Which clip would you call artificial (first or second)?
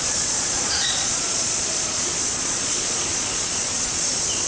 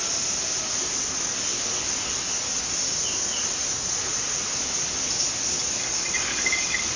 first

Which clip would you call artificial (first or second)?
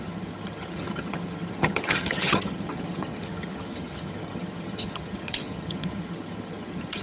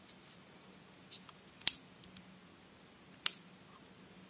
first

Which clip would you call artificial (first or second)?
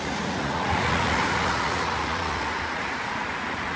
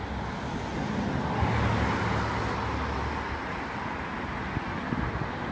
first